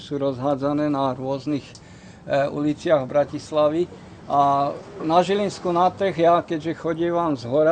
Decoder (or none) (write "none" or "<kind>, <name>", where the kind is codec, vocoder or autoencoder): none